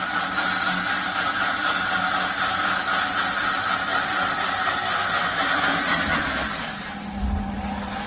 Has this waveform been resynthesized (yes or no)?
no